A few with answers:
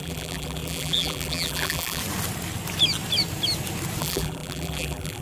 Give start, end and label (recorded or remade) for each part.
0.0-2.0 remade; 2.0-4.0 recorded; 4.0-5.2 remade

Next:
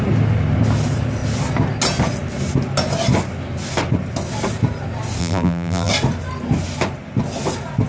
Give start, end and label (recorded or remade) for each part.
0.0-5.2 recorded; 5.2-5.9 remade; 5.9-7.9 recorded